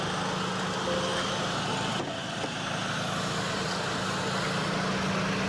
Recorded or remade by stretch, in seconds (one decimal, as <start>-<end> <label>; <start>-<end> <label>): 0.0-1.1 recorded; 1.1-4.2 remade; 4.2-5.5 recorded